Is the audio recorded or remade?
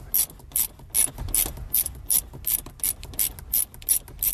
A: recorded